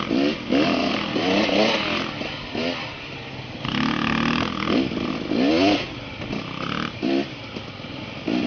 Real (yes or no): yes